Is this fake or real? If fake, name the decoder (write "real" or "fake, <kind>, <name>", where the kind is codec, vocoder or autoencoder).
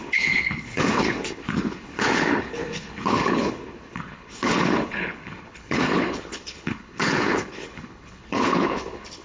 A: fake, codec, HILCodec